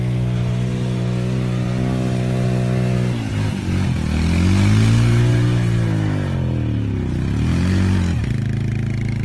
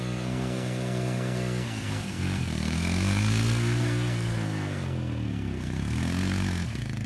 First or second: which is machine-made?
second